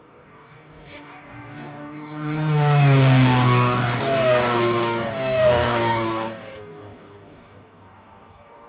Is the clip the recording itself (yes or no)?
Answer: no